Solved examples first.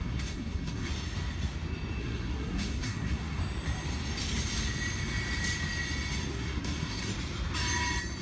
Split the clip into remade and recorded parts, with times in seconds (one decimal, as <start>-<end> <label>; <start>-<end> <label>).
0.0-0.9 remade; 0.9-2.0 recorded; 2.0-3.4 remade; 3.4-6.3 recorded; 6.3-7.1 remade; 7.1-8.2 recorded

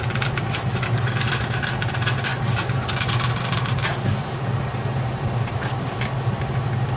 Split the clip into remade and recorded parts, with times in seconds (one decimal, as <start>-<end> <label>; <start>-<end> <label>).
0.0-7.0 recorded

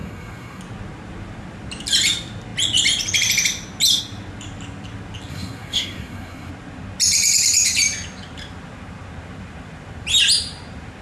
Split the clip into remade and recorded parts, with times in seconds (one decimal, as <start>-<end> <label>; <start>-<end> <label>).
0.0-0.6 remade; 0.6-5.3 recorded; 5.3-6.5 remade; 6.5-11.0 recorded